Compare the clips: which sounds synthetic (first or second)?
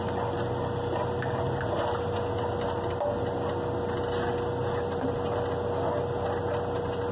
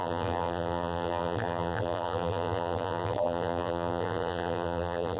second